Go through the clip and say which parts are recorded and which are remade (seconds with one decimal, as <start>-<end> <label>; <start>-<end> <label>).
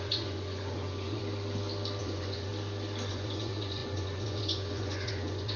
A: 0.0-1.2 remade; 1.2-2.0 recorded; 2.0-2.5 remade; 2.5-3.1 recorded; 3.1-5.6 remade